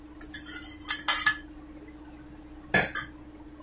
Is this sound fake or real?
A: real